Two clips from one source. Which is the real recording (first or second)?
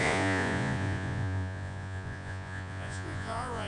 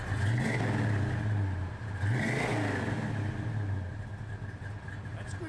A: second